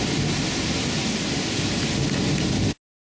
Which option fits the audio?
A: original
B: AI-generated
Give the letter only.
A